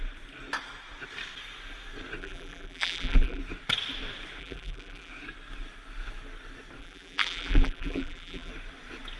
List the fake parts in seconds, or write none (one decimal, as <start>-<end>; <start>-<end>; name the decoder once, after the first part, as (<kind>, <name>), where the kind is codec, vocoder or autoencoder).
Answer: 2.2-3.4 (vocoder, BigVGAN v2); 4.4-5.1; 6.8-8.5